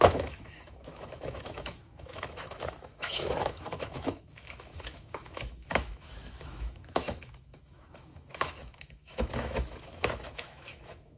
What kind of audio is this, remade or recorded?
remade